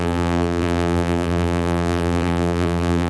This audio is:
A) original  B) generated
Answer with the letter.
B